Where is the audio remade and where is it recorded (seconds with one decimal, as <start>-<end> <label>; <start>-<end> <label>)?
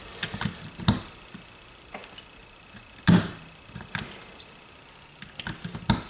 0.0-6.1 recorded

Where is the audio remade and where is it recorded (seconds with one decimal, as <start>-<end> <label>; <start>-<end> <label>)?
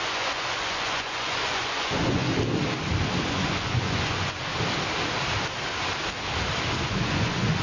0.0-2.3 remade; 2.3-3.3 recorded; 3.3-4.5 remade; 4.5-6.8 recorded; 6.8-7.6 remade